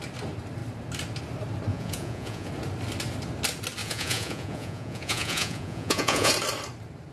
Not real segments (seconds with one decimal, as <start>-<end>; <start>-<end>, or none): 1.7-2.5; 3.8-6.3